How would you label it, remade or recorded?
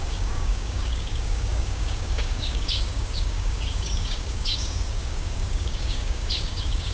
remade